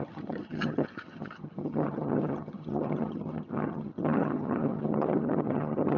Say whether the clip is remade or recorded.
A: remade